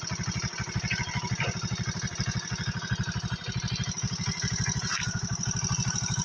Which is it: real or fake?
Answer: real